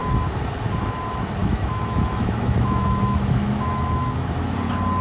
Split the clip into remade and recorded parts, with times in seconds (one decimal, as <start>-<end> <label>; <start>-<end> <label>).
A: 0.0-1.4 recorded; 1.4-4.4 remade; 4.4-5.0 recorded